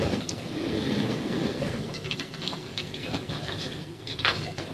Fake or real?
fake